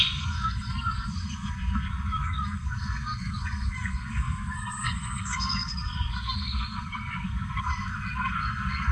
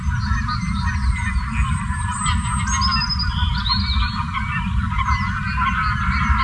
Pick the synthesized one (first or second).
first